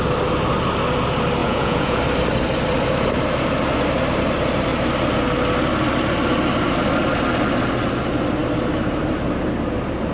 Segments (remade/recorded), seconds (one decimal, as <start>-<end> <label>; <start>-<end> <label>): 0.0-1.4 recorded; 1.4-2.0 remade; 2.0-10.1 recorded